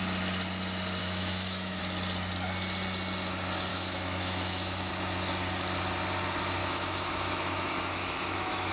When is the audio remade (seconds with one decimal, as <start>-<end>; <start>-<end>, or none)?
1.0-1.8; 3.7-4.9; 6.6-8.7

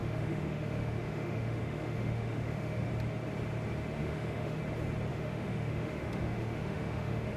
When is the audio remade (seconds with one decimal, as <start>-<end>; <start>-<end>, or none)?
0.0-2.9; 4.0-4.6; 5.1-7.4